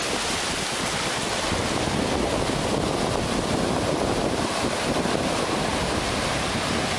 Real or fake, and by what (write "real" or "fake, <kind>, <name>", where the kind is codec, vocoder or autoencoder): real